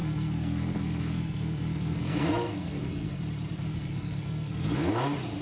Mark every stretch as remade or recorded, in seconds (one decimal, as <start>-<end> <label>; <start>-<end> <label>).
0.0-3.2 remade; 3.2-3.7 recorded; 3.7-4.9 remade; 4.9-5.4 recorded